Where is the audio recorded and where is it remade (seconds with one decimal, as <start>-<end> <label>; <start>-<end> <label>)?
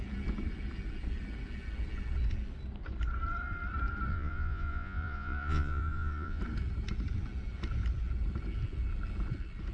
0.0-4.1 recorded; 4.1-6.4 remade; 6.4-9.7 recorded